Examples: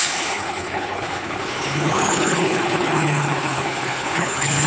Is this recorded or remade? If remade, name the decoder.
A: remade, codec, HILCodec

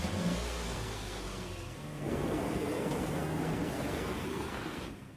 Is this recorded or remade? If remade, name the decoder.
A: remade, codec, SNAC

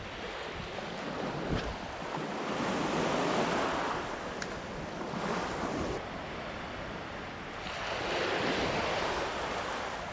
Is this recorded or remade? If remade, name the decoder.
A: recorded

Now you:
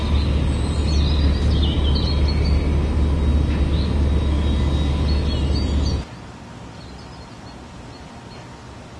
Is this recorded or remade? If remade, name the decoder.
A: recorded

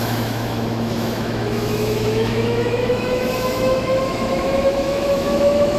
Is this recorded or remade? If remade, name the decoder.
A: remade, autoencoder, DAC-VAE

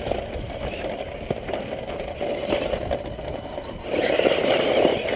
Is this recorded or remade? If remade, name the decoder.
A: recorded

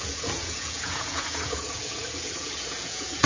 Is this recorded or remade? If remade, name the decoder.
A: remade, vocoder, Vocos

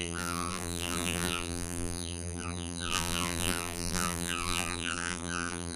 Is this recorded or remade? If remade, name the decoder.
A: remade, vocoder, BigVGAN v2